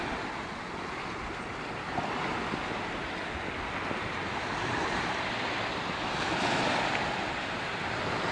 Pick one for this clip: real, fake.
real